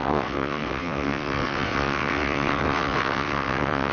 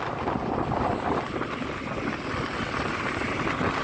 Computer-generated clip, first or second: first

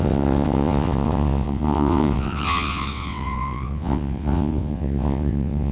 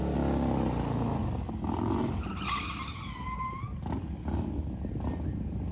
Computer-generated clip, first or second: first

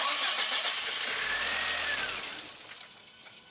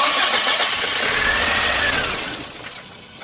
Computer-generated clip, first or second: second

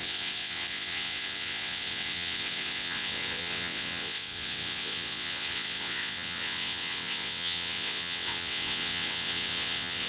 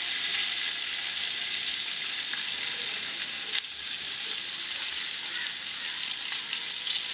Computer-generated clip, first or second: first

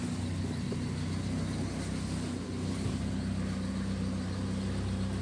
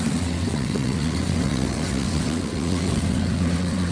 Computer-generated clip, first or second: second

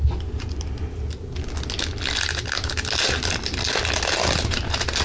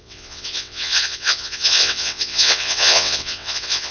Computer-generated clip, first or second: second